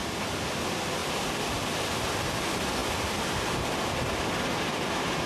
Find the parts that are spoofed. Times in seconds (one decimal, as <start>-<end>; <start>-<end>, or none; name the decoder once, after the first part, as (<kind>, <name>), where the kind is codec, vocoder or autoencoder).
0.0-0.6 (vocoder, BigVGAN v2); 2.8-3.5